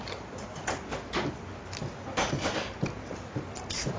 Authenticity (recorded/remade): recorded